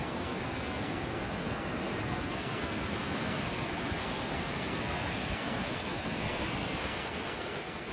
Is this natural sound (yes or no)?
no